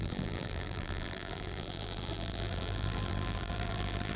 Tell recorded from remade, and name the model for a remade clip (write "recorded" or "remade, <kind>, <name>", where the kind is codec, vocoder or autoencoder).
remade, vocoder, BigVGAN v2